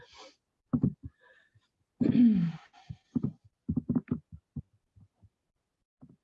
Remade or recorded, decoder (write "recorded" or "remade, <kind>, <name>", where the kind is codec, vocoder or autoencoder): recorded